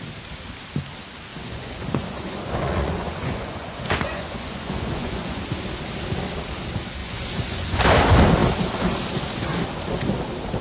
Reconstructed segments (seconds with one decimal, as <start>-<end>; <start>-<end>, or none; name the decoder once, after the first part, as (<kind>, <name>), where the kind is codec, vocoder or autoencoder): 1.3-5.4 (vocoder, Vocos); 7.0-7.8